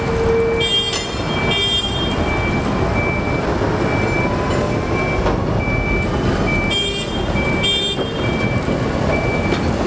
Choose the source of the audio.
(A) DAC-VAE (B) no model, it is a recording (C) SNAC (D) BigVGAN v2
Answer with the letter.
B